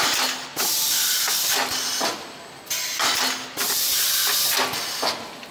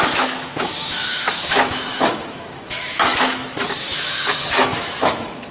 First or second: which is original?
first